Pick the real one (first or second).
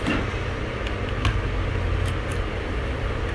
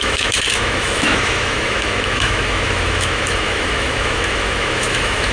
first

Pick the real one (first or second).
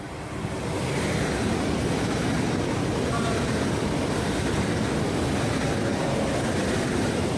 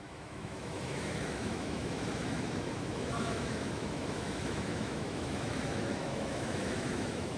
first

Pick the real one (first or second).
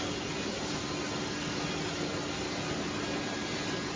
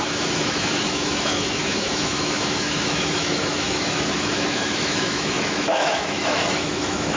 first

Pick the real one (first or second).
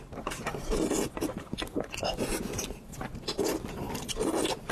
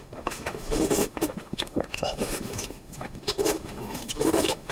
first